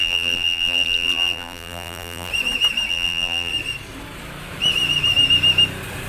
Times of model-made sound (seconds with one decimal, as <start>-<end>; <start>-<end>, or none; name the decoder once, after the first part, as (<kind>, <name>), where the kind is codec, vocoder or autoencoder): 0.0-2.3 (vocoder, BigVGAN v2); 2.9-3.5